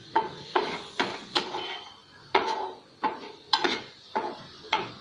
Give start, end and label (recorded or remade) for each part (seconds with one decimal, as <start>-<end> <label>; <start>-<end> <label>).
0.0-1.4 remade; 1.4-2.0 recorded; 2.0-5.0 remade